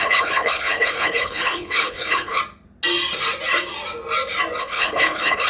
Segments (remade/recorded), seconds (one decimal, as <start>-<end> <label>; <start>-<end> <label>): 0.0-2.4 remade; 2.4-4.6 recorded; 4.6-5.5 remade